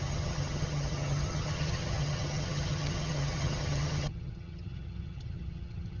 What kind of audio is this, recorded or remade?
remade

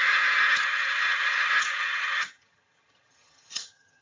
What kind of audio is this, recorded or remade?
remade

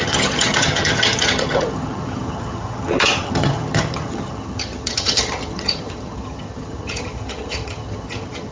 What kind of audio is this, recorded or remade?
remade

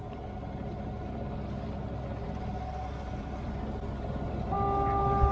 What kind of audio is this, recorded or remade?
recorded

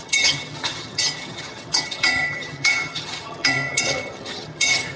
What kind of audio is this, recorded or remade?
remade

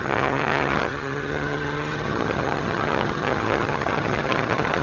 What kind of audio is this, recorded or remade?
remade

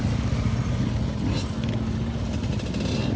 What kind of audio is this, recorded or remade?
recorded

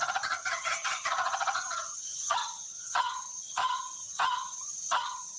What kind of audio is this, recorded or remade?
remade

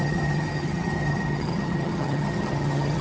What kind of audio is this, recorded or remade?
remade